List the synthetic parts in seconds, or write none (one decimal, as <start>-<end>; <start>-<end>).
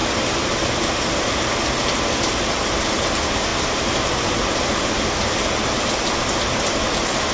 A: none